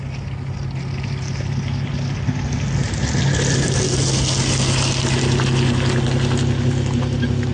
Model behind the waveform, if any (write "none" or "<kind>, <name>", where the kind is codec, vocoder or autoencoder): none